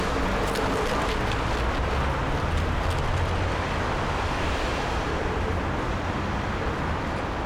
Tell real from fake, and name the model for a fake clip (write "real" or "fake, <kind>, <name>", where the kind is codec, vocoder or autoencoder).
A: real